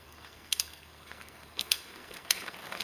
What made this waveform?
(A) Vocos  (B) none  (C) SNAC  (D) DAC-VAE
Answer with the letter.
C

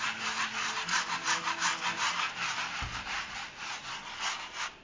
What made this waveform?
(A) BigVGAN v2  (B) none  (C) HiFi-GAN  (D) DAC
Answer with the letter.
B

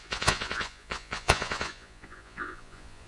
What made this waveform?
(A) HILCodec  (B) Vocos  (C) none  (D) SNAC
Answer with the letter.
B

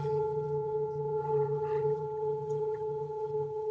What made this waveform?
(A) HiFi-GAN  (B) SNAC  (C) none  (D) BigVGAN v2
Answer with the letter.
A